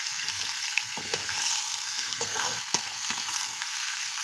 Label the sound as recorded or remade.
remade